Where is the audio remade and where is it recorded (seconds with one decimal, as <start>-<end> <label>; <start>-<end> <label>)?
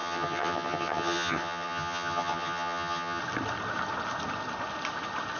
0.0-3.2 remade; 3.2-5.4 recorded